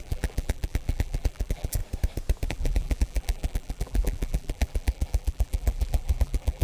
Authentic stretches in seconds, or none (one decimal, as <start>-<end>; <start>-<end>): 1.8-2.5